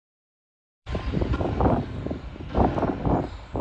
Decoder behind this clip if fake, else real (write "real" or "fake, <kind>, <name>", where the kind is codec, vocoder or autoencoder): fake, vocoder, BigVGAN v2